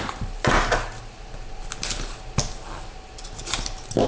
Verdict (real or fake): real